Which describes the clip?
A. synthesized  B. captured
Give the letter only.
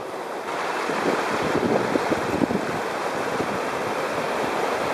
B